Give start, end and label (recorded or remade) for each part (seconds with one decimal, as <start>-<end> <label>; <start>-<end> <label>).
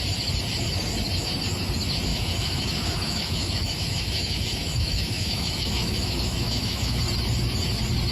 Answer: 0.0-2.1 recorded; 2.1-7.0 remade; 7.0-8.1 recorded